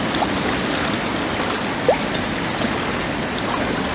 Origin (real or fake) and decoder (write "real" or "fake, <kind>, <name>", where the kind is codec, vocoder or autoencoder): real